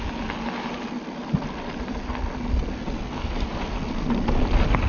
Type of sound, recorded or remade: recorded